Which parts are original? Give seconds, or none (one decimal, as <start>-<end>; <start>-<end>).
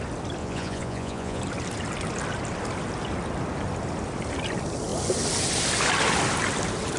0.0-0.4; 1.4-7.0